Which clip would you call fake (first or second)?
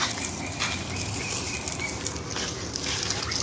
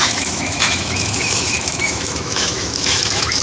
second